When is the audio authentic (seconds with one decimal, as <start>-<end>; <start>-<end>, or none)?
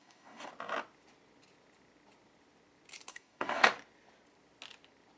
0.5-3.1; 3.7-5.2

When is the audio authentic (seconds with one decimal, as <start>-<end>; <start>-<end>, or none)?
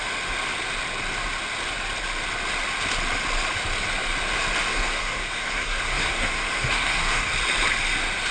0.0-4.7; 7.3-8.3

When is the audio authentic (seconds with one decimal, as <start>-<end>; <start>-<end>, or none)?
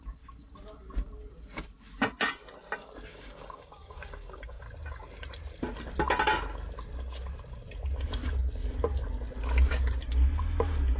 0.0-3.1; 4.6-11.0